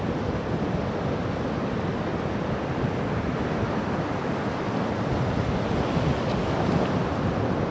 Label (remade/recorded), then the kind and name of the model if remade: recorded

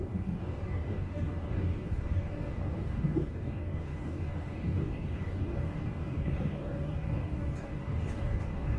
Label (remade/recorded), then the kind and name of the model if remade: remade, codec, DAC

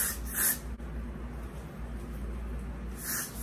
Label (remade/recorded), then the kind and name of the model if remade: recorded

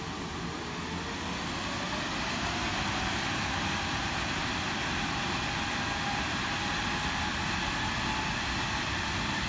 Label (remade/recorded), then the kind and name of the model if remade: recorded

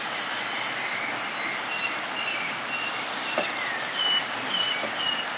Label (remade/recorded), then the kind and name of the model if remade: recorded